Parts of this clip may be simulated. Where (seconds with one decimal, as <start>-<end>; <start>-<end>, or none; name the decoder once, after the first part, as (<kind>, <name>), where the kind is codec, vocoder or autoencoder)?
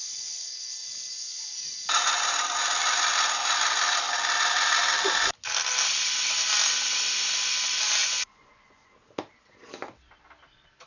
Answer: 8.0-8.9 (vocoder, Vocos)